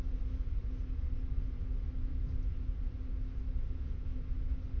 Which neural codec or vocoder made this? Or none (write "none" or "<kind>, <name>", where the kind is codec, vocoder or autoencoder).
none